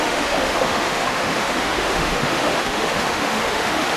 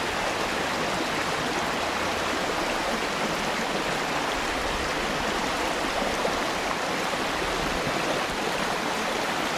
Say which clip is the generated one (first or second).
first